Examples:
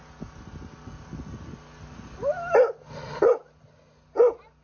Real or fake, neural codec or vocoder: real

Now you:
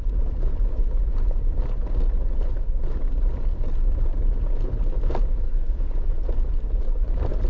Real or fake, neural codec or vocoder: real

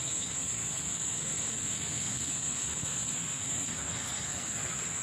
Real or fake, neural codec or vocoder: fake, codec, SNAC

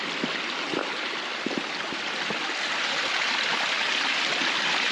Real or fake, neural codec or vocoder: real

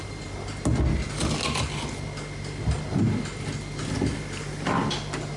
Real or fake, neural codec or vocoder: real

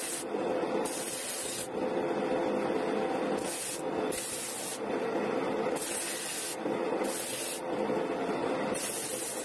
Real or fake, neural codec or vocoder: real